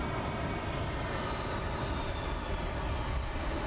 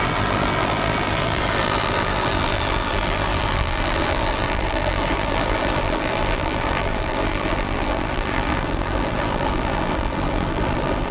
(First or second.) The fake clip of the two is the second